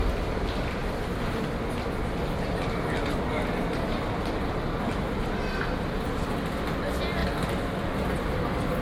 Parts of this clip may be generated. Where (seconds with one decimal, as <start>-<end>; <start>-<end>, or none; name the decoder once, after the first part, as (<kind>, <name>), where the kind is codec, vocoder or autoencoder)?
none